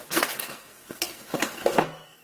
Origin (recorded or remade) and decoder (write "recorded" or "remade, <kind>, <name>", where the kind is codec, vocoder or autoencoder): remade, codec, SNAC